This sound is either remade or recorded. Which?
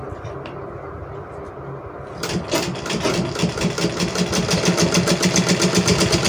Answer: recorded